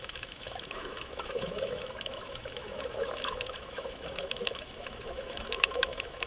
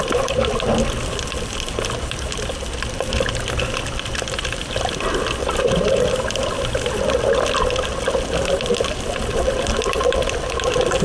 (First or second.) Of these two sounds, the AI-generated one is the first